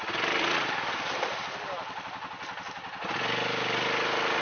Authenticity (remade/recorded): recorded